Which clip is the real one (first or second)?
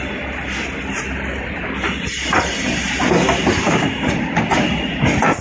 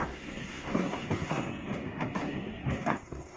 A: first